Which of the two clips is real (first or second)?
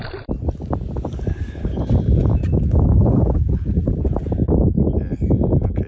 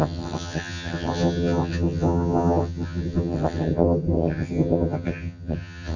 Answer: first